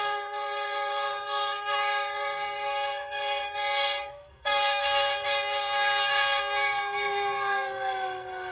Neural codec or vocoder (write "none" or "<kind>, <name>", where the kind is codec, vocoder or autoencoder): codec, SNAC